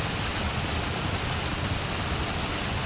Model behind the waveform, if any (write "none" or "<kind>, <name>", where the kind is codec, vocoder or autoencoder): none